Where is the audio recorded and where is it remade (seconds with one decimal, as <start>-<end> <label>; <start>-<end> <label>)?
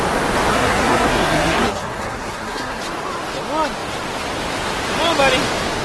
0.0-0.5 recorded; 0.5-2.8 remade; 2.8-5.8 recorded